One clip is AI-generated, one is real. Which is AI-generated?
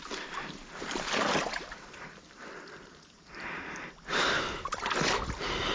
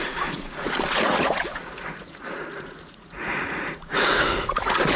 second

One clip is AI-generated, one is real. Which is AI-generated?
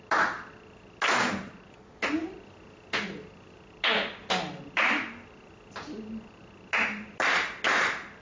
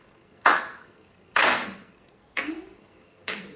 second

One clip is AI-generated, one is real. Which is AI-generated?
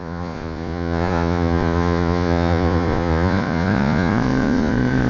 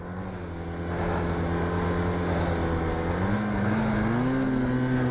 first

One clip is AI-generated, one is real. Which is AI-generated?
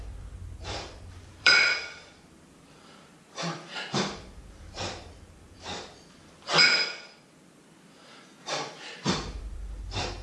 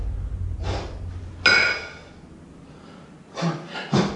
first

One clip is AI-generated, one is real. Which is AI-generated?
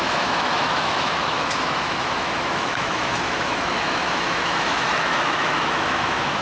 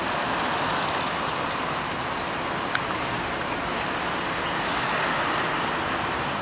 first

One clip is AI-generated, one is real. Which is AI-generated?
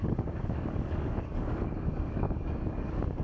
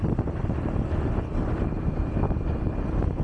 first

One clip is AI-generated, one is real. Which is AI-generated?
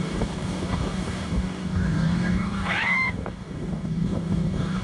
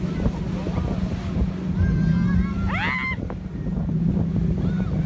first